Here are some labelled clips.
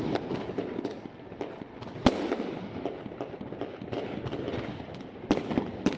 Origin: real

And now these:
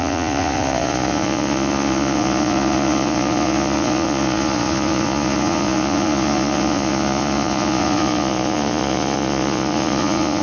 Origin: fake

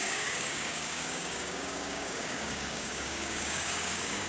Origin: fake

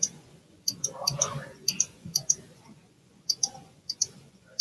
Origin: fake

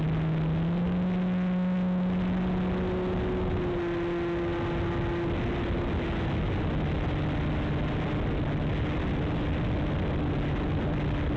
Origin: real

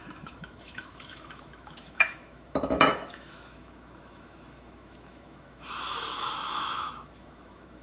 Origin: fake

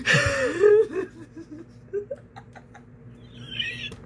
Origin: real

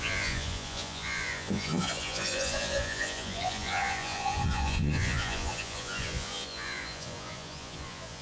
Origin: fake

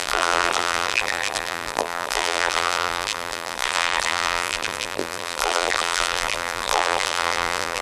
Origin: fake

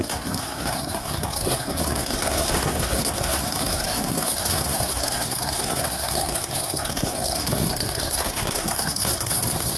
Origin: fake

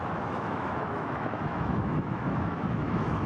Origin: fake